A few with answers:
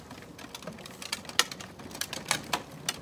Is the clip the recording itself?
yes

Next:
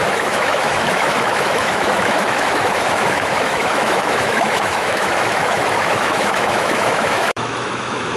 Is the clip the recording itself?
no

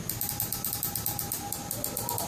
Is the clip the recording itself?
yes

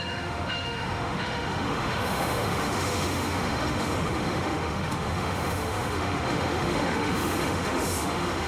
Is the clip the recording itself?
no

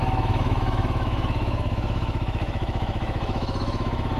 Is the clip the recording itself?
no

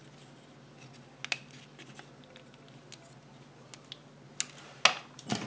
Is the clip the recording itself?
yes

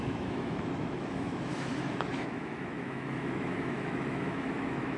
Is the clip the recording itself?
no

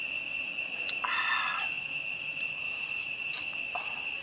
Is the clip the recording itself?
yes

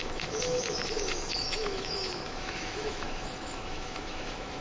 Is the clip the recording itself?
no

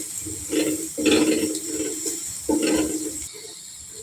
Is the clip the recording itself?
yes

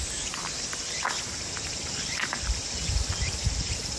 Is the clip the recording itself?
yes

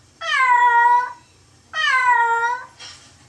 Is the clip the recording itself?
yes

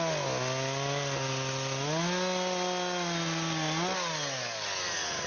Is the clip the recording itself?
yes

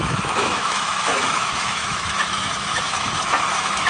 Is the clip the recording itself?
no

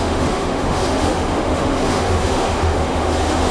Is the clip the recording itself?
no